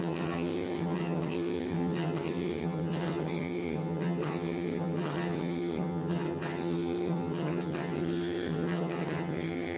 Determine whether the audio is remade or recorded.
remade